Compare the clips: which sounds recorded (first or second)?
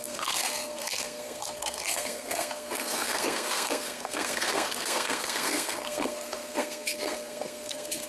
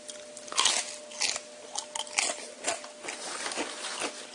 second